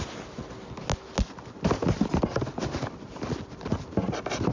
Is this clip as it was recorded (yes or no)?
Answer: yes